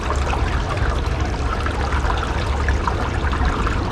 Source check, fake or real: real